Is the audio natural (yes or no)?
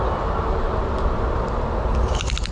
yes